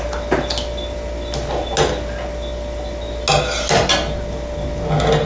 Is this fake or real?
real